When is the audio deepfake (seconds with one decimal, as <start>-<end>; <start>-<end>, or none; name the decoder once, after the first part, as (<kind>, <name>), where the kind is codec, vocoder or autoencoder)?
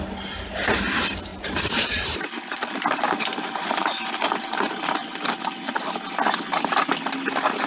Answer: 1.3-4.1 (vocoder, BigVGAN v2); 5.0-5.7